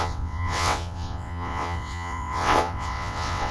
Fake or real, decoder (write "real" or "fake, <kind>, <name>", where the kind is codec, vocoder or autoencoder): fake, vocoder, WaveNeXt